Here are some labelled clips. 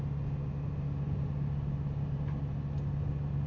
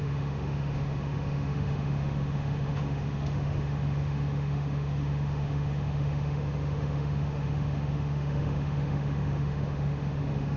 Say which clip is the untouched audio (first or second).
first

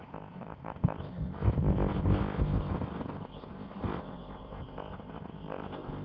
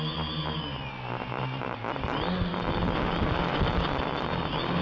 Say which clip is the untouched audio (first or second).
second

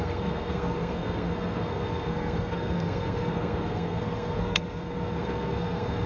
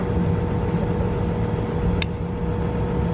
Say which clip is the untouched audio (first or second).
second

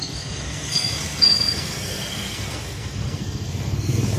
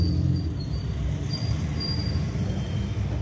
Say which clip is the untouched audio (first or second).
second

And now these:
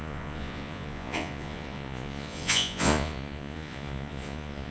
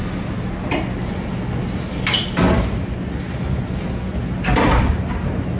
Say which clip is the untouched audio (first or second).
second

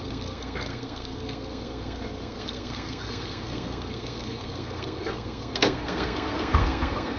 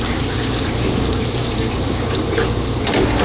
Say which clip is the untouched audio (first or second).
second